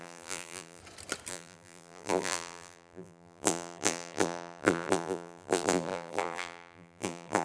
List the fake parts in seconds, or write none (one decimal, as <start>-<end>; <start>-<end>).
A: 0.0-0.8; 1.3-7.4